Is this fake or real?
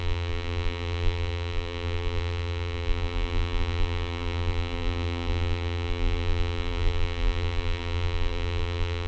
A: fake